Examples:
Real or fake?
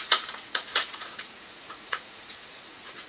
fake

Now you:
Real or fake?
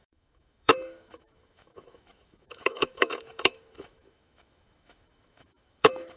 fake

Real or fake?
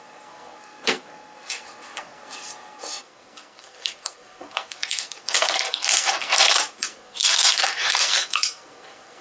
fake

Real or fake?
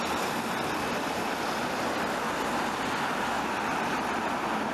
real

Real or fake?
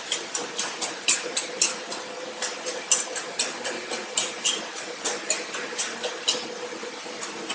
real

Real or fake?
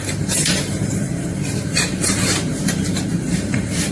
fake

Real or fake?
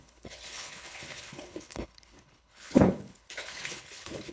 fake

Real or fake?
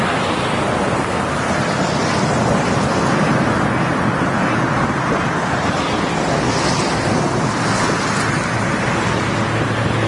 real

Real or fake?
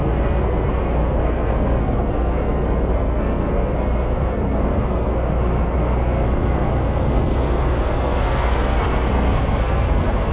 fake